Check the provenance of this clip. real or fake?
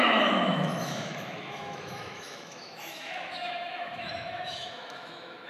fake